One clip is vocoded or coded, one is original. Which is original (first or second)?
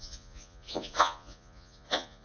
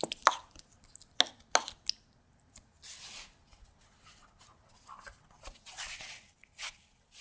second